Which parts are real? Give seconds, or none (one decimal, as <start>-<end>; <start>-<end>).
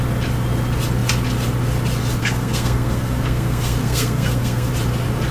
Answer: 0.0-2.2; 4.7-5.3